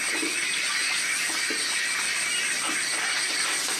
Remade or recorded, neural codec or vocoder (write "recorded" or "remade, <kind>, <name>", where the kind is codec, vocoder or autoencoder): recorded